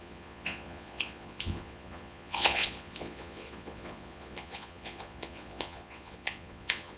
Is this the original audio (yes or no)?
no